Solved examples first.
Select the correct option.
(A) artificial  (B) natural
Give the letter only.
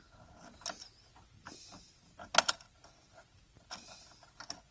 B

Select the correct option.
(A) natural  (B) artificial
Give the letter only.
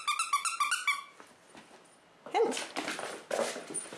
A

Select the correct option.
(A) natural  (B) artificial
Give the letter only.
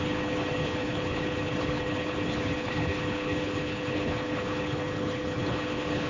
B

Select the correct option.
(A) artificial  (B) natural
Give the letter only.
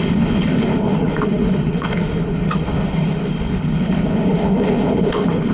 A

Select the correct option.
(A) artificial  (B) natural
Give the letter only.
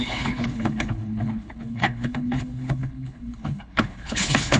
A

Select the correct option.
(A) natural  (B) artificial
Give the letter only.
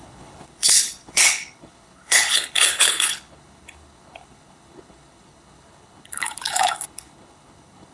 B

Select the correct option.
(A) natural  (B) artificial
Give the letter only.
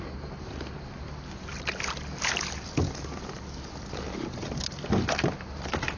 A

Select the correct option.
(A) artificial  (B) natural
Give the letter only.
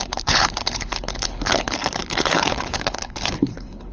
A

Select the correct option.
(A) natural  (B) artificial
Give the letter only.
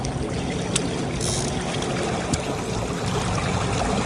A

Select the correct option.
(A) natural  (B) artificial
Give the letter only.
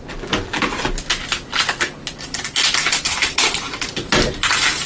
A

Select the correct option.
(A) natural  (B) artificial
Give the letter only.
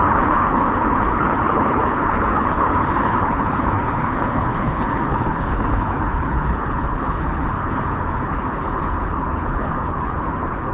B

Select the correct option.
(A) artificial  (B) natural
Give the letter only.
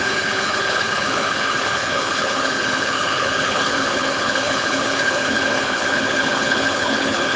A